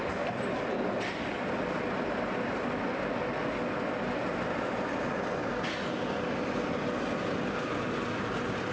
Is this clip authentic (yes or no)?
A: yes